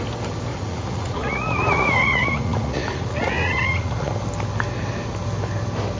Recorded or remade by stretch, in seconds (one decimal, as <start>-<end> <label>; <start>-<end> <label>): 0.0-0.5 recorded; 0.5-4.1 remade; 4.1-6.0 recorded